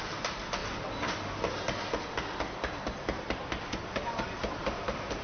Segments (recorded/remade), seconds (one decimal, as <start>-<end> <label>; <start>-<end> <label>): 0.0-5.2 recorded